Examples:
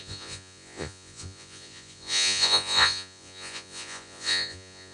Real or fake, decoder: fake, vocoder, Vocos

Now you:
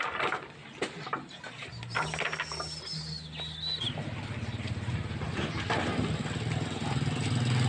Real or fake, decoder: real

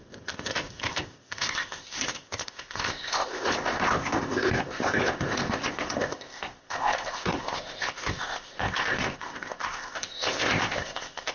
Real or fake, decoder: fake, codec, ZipCodec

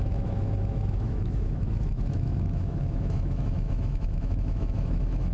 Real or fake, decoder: fake, autoencoder, DAC-VAE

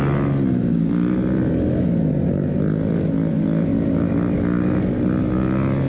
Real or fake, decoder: real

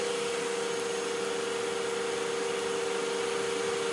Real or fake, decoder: real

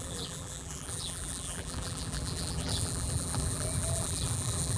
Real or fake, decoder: fake, vocoder, BigVGAN v2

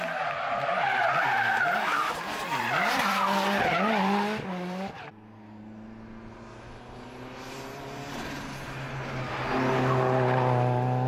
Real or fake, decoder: real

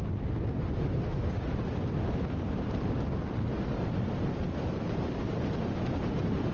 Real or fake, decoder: real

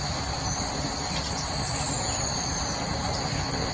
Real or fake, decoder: real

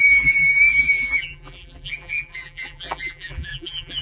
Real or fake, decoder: fake, vocoder, BigVGAN v2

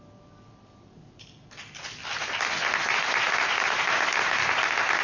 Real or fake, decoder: real